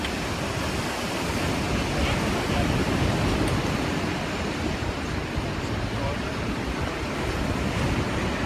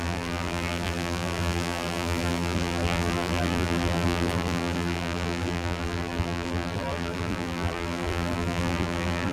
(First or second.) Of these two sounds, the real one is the first